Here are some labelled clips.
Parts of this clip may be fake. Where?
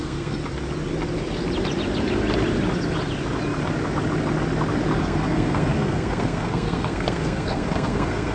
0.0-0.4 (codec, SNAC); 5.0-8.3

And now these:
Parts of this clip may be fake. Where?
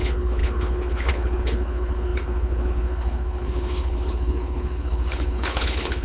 0.0-6.0 (codec, HILCodec)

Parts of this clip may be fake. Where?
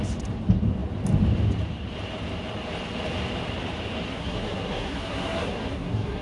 4.1-6.2 (codec, SNAC)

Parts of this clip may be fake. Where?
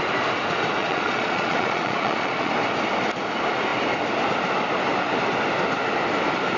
0.8-2.5 (vocoder, Vocos)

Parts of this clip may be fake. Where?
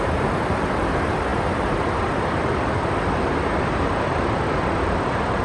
none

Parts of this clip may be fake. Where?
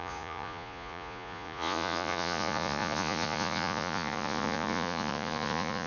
0.0-5.9 (vocoder, Vocos)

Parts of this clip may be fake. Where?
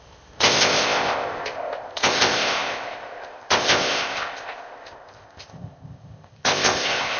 0.0-7.2 (codec, ZipCodec)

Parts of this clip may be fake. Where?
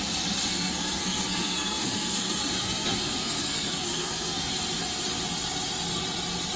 0.5-4.5 (codec, SNAC)